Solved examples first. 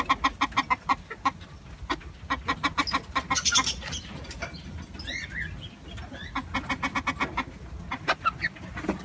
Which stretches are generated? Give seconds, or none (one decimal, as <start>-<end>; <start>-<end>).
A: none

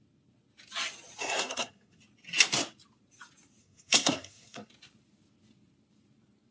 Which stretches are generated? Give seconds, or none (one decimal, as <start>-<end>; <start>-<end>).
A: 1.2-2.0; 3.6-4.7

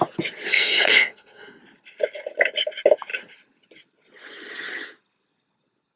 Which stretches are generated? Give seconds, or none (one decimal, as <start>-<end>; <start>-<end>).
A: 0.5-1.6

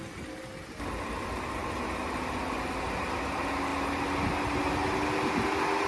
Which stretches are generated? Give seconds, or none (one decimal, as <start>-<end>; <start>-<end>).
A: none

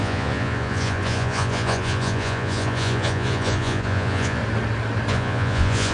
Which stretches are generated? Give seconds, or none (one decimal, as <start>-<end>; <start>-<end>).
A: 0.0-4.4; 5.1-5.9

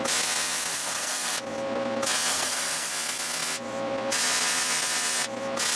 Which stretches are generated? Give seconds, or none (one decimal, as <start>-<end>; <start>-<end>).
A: 0.7-1.3; 2.3-2.9